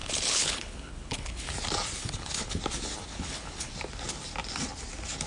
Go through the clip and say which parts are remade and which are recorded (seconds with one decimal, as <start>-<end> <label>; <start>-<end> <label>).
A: 0.0-1.5 remade; 1.5-2.0 recorded; 2.0-2.6 remade; 2.6-3.1 recorded; 3.1-3.7 remade; 3.7-5.3 recorded